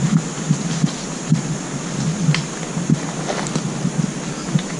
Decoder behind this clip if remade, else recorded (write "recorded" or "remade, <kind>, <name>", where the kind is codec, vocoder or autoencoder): recorded